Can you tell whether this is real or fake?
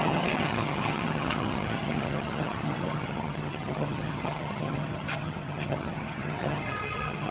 fake